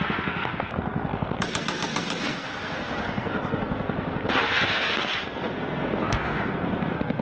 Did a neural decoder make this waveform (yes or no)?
yes